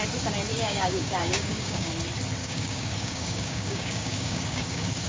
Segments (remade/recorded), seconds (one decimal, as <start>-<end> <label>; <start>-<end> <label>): 0.0-0.5 recorded; 0.5-1.9 remade; 1.9-2.4 recorded; 2.4-5.1 remade